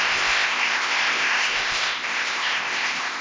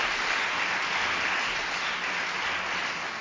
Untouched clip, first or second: second